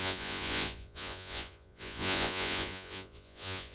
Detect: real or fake fake